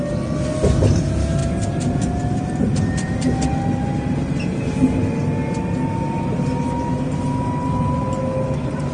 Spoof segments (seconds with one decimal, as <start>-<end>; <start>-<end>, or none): none